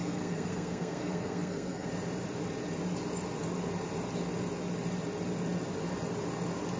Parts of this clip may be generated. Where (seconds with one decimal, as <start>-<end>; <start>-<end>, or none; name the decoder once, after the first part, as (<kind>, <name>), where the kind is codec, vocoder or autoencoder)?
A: 0.0-1.9 (codec, SNAC)